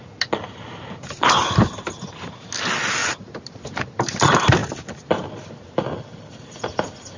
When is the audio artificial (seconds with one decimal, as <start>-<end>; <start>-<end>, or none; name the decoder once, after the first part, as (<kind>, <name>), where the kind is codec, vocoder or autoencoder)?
none